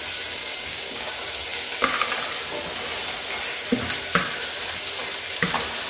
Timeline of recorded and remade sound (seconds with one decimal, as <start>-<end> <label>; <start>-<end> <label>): 0.0-0.4 recorded; 0.4-1.1 remade; 1.1-5.9 recorded